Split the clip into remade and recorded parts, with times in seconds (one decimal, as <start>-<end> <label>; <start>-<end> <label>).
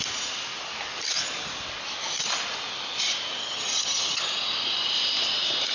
0.0-3.4 recorded; 3.4-4.2 remade; 4.2-5.7 recorded